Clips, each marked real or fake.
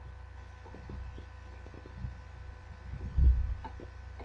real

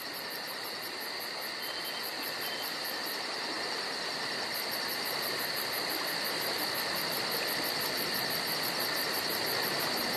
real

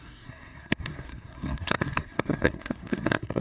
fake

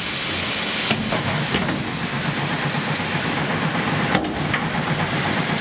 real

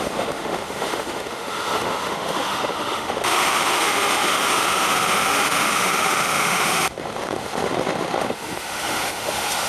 fake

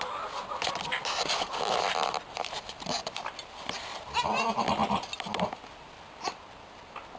real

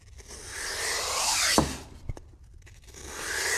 real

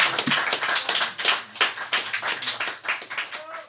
real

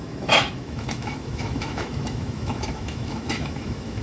fake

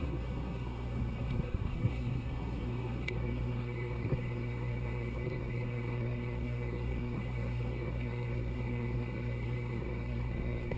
fake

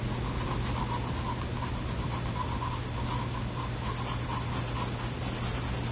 real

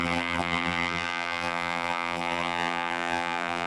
fake